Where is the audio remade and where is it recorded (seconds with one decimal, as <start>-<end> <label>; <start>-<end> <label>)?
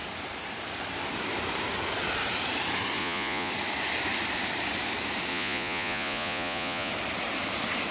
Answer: 0.0-3.0 recorded; 3.0-3.5 remade; 3.5-5.3 recorded; 5.3-6.9 remade; 6.9-7.9 recorded